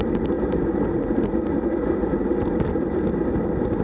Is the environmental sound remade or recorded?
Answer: recorded